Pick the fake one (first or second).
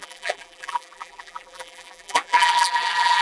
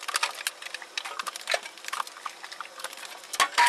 first